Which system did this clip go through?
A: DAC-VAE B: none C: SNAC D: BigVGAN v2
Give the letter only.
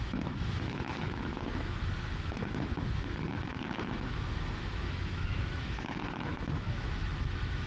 A